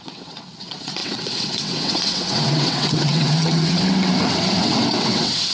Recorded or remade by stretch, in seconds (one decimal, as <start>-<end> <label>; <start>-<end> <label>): 0.0-5.5 remade